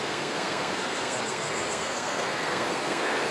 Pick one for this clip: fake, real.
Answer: fake